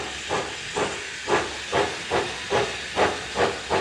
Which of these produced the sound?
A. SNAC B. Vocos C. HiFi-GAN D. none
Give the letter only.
D